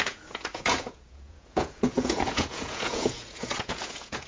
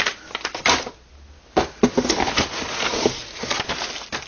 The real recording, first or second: second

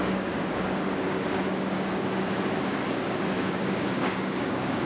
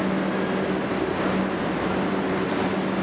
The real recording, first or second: second